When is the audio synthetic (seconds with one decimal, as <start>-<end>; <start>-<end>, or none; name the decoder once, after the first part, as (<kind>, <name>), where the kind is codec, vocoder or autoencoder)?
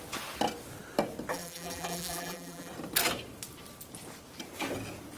1.3-2.7 (vocoder, BigVGAN v2)